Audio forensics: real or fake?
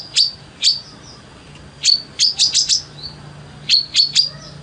real